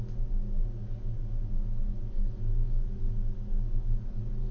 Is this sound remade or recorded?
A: recorded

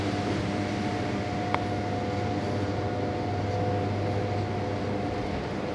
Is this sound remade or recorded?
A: recorded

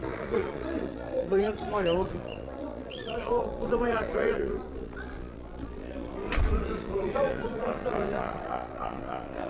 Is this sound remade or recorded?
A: remade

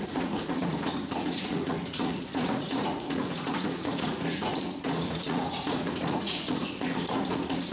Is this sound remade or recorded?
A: remade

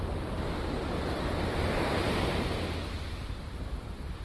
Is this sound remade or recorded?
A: recorded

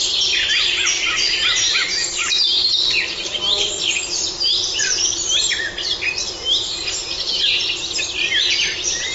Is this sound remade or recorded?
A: remade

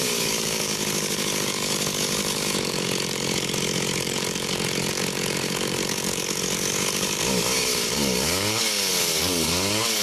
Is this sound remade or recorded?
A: remade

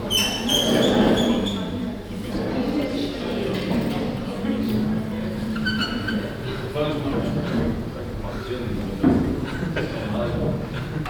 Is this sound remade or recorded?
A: remade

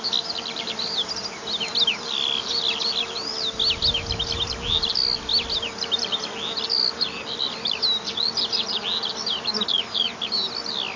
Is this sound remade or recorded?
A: recorded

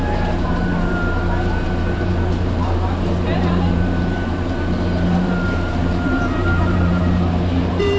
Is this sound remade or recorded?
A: remade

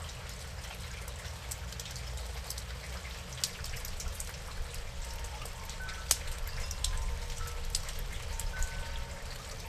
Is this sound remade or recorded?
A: recorded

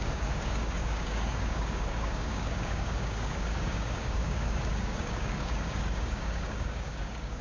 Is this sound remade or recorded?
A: remade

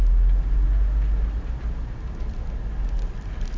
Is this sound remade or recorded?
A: recorded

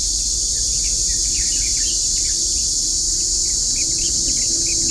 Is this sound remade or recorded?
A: recorded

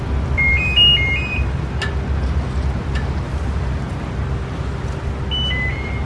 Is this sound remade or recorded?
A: recorded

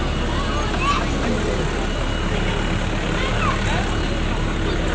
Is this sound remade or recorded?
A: recorded